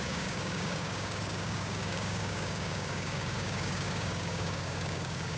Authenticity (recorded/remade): remade